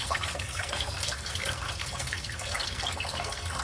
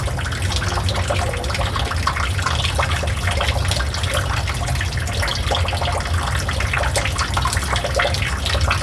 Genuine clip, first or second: second